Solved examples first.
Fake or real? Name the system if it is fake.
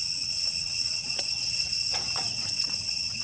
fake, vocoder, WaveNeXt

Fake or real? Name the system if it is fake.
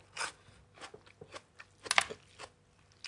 real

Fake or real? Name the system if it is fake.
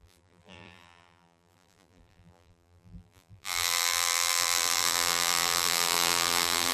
fake, vocoder, BigVGAN v2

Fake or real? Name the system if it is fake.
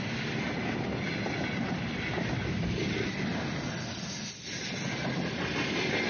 real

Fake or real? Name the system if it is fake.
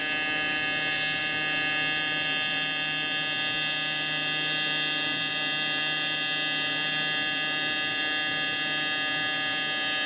real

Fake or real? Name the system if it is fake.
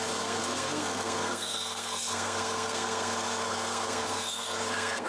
fake, codec, SNAC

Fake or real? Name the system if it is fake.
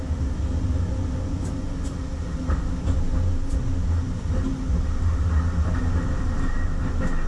real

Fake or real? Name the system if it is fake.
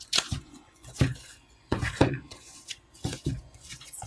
fake, vocoder, Vocos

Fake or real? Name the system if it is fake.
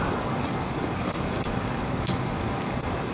fake, codec, DAC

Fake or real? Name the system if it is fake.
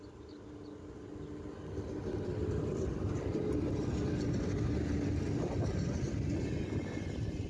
real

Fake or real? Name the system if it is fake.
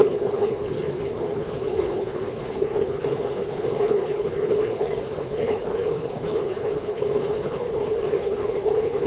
fake, codec, HILCodec